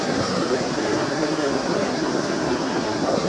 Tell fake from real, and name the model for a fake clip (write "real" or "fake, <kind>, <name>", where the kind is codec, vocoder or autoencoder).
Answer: fake, codec, SNAC